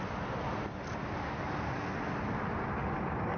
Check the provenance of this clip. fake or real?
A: real